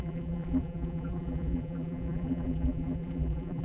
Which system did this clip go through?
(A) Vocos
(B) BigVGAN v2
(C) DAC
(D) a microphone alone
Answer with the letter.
B